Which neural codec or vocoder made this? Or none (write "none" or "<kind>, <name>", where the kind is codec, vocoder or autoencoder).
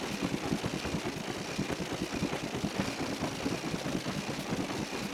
none